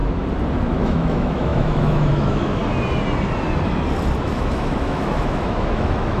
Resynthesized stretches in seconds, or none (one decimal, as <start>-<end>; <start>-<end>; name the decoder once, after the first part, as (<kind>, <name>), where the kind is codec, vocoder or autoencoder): 0.8-2.6 (autoencoder, DAC-VAE); 4.2-6.2